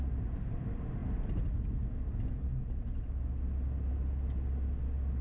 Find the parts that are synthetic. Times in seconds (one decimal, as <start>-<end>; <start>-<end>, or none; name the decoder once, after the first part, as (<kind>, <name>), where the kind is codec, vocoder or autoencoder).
none